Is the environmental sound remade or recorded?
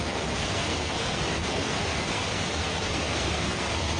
remade